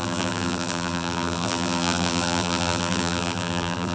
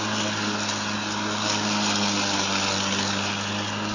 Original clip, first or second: second